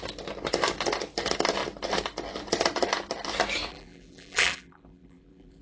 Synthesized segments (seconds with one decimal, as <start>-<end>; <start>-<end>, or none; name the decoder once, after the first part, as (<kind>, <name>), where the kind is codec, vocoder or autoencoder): 3.7-5.6 (vocoder, BigVGAN v2)